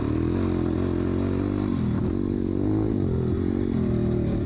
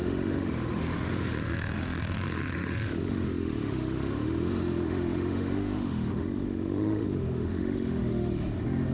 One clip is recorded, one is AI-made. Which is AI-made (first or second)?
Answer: second